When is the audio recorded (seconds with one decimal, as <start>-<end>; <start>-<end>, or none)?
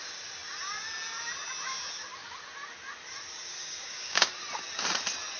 0.0-3.6; 4.3-5.4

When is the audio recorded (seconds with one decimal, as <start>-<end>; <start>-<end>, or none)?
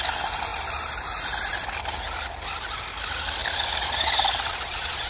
0.0-4.5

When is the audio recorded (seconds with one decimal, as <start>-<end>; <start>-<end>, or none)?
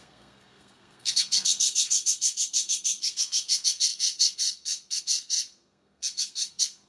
none